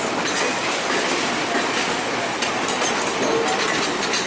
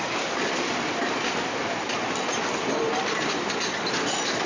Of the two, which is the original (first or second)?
first